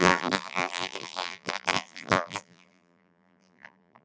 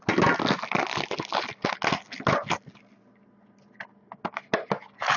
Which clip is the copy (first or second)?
first